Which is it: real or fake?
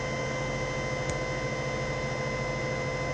real